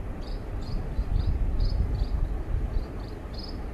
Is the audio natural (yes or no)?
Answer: yes